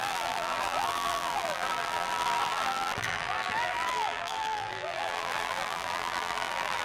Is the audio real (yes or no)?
no